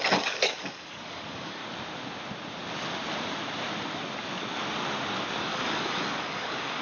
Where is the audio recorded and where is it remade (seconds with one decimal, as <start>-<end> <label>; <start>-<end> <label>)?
0.0-1.6 remade; 1.6-5.4 recorded; 5.4-6.8 remade

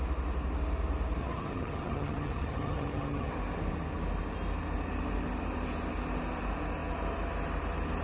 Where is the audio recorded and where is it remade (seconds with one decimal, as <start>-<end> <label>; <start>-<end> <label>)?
0.0-1.2 recorded; 1.2-3.3 remade; 3.3-8.0 recorded